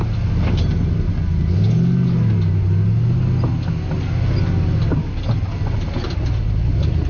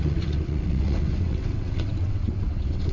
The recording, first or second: first